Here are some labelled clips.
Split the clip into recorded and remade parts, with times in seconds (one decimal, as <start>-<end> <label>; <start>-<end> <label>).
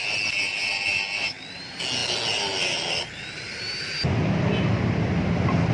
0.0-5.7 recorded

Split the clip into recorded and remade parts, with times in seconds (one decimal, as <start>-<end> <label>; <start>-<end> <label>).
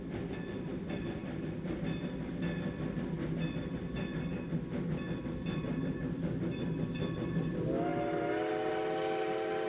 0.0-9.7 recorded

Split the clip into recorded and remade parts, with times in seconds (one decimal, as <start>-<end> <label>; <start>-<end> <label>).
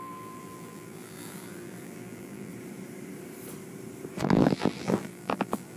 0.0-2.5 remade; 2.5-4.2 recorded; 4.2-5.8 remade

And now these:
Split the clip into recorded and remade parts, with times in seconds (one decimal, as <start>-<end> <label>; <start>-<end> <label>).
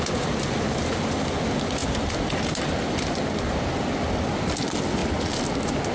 0.0-5.9 recorded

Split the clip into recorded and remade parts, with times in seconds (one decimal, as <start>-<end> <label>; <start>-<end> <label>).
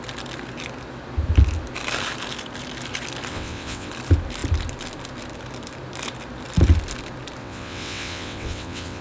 0.0-3.3 recorded; 3.3-3.9 remade; 3.9-7.4 recorded; 7.4-9.0 remade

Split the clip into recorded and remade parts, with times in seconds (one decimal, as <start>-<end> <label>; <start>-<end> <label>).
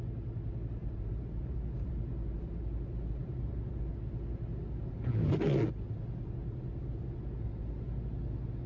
0.0-0.8 recorded; 0.8-1.9 remade; 1.9-3.2 recorded; 3.2-3.9 remade; 3.9-8.7 recorded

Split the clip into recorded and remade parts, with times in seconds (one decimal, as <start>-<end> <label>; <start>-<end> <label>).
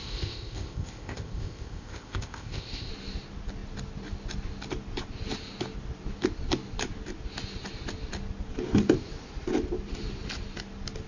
0.0-2.9 remade; 2.9-11.1 recorded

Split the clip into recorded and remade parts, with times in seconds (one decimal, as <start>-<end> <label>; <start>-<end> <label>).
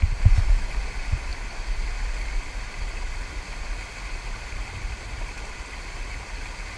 0.0-6.8 recorded